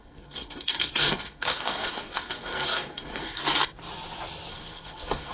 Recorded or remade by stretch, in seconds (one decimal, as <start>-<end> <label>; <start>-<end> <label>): 0.0-3.4 remade; 3.4-4.5 recorded; 4.5-5.3 remade